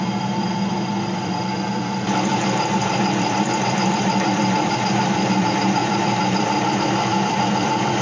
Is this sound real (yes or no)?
no